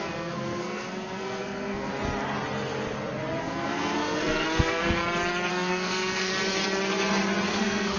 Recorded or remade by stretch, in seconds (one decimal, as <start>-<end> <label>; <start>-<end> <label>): 0.0-1.9 remade; 1.9-3.4 recorded; 3.4-5.0 remade; 5.0-5.5 recorded; 5.5-6.3 remade; 6.3-7.5 recorded; 7.5-8.0 remade